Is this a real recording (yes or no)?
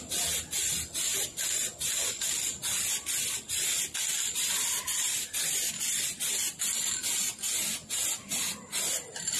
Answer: yes